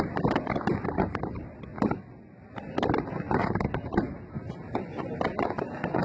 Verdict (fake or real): real